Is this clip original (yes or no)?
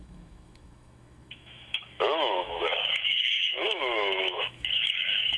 no